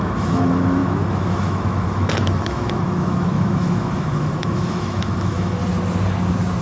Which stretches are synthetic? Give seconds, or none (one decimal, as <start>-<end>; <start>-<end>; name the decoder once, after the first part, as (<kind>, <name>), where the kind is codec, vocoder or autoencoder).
0.0-5.6 (autoencoder, DAC-VAE)